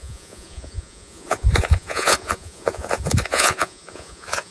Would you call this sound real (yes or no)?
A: no